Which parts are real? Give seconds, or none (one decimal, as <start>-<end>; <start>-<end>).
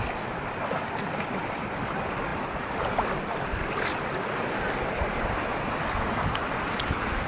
0.0-7.3